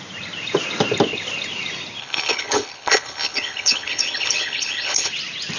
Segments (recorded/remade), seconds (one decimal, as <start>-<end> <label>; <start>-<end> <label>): 0.0-2.0 recorded; 2.0-5.1 remade; 5.1-5.6 recorded